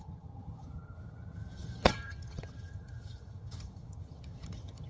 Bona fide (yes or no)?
no